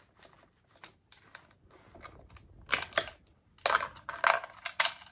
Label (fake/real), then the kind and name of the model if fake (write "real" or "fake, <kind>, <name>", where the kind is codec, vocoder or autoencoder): real